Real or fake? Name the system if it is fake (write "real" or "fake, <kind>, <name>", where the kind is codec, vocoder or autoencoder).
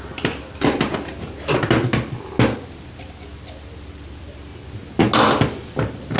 real